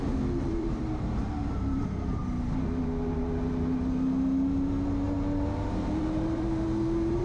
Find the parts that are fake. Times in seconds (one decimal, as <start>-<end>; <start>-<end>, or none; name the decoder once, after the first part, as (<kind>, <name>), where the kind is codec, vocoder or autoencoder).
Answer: 0.0-2.2 (vocoder, BigVGAN v2); 6.0-7.2